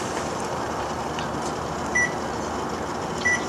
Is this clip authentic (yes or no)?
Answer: no